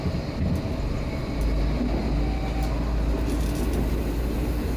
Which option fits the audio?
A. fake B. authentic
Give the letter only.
B